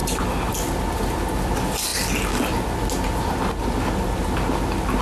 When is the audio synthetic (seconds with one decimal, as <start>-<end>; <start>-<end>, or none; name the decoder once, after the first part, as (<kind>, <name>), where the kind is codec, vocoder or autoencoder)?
none